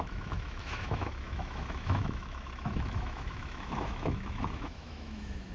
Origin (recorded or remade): remade